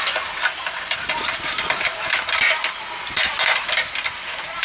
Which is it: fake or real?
real